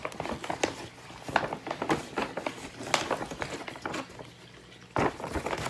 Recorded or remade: recorded